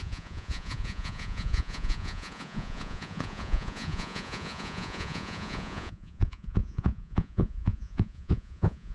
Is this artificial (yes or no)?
yes